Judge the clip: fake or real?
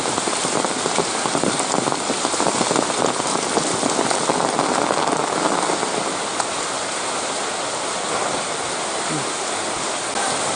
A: real